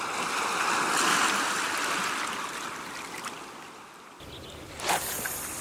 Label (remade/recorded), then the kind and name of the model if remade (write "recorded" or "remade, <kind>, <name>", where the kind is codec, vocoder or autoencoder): recorded